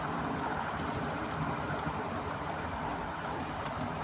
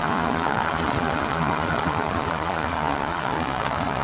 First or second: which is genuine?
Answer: first